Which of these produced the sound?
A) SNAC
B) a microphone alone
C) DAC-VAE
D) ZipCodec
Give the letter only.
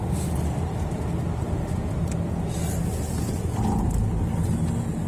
B